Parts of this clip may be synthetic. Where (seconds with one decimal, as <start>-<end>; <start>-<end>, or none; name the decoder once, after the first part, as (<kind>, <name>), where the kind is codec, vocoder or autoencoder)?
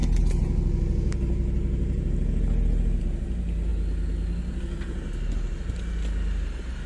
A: none